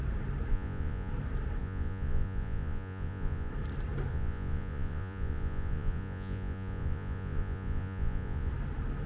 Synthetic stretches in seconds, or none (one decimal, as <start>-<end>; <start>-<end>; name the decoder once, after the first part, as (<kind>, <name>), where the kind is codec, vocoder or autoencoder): 0.5-1.1 (vocoder, Vocos); 1.6-3.5; 4.1-8.5